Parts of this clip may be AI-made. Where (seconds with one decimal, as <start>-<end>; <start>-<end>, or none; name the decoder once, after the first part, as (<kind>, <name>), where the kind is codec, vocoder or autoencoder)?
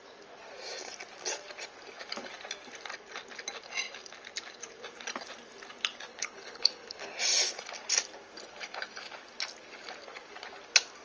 6.1-7.2 (codec, HILCodec)